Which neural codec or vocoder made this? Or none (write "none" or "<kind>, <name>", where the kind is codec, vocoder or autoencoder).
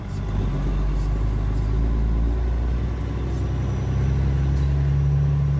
none